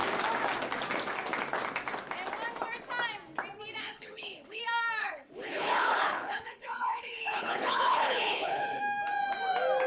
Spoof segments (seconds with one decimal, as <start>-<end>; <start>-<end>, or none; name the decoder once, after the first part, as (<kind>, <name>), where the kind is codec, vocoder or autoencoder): 3.8-4.6 (codec, HILCodec); 5.0-8.8